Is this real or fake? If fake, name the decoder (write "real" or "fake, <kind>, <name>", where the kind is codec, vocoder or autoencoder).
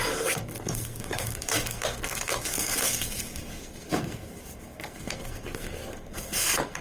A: fake, codec, SNAC